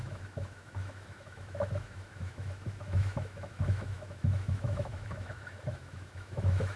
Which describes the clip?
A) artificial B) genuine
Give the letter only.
A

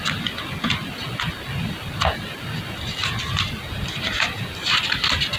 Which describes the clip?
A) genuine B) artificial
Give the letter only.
A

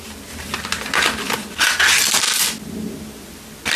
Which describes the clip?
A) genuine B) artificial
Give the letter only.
A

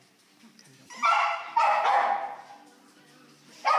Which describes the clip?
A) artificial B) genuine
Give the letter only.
B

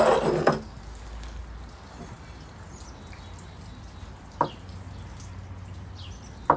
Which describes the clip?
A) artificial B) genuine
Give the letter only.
B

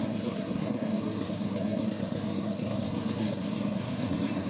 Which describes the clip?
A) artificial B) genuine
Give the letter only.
A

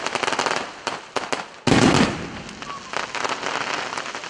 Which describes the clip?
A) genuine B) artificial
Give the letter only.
A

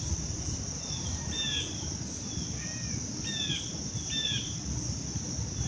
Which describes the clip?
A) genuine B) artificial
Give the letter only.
A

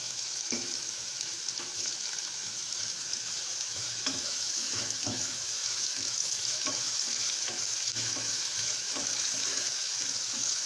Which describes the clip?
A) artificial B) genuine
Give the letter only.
A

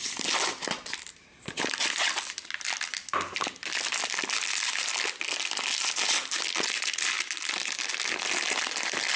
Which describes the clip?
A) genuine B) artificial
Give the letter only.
A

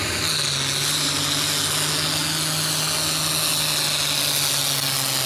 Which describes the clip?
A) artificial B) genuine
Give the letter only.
B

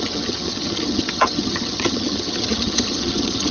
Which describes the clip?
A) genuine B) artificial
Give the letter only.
B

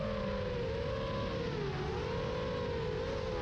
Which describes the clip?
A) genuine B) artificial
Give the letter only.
A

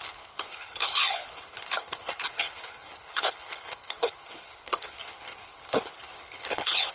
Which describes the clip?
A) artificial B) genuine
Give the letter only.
A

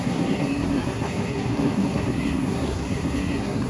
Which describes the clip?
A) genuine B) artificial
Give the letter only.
B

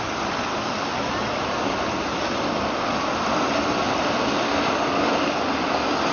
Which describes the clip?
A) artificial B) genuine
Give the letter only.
B